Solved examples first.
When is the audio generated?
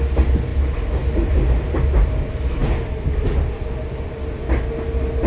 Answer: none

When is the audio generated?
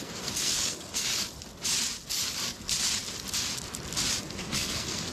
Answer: 0.0-1.1 (codec, SNAC); 4.2-5.1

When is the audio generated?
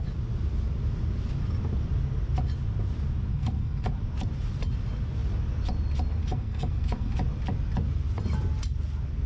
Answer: 3.3-3.9 (codec, SNAC); 6.2-7.1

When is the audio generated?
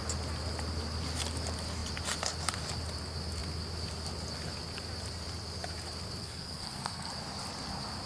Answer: 6.2-7.1 (codec, SNAC)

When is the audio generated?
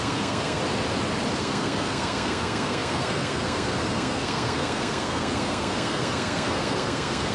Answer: 0.0-0.6 (codec, SNAC); 1.4-7.3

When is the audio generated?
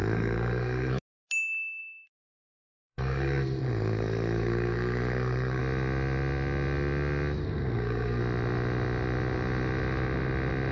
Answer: 0.0-1.0 (codec, SNAC); 1.8-5.6; 7.4-8.2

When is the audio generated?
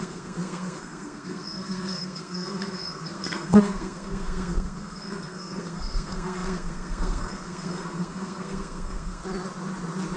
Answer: 0.0-9.2 (codec, SNAC)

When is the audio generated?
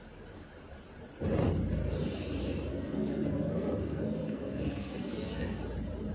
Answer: 2.7-5.6 (codec, SNAC)